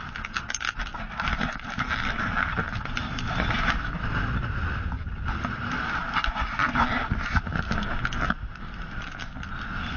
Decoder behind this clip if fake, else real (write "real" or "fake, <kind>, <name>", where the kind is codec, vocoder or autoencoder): real